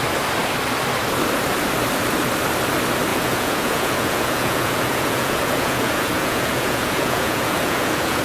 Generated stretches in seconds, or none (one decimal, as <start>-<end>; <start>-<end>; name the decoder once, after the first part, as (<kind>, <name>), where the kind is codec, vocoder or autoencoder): 3.1-8.2 (vocoder, Vocos)